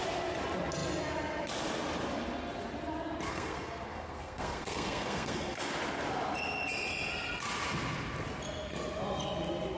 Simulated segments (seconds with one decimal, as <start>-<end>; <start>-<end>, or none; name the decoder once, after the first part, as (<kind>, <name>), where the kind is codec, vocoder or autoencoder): 3.3-5.7 (codec, SNAC)